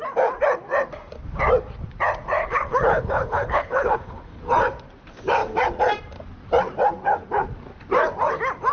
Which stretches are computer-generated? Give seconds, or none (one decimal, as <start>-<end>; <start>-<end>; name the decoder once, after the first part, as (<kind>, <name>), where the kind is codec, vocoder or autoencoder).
2.4-4.4 (codec, HILCodec)